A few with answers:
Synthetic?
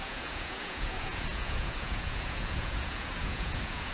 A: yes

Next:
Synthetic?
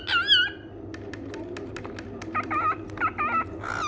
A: no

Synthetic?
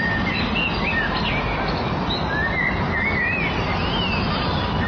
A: no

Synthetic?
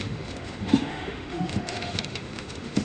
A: yes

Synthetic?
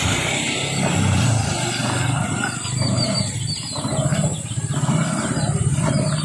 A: no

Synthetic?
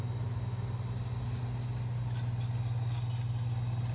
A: no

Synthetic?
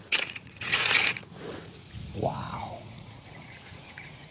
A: yes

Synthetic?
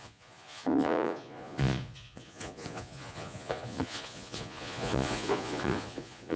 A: yes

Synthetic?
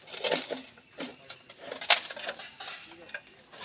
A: no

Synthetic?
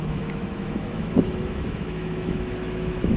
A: yes